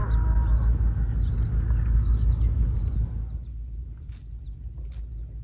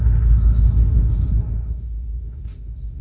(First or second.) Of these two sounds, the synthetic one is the second